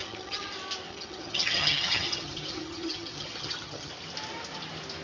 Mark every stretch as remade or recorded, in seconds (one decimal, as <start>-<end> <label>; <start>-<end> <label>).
0.0-0.5 remade; 0.5-0.9 recorded; 0.9-3.9 remade; 3.9-5.0 recorded